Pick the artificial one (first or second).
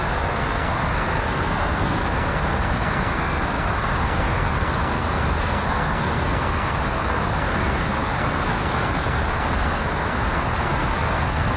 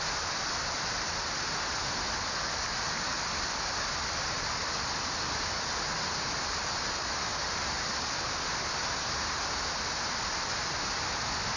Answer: first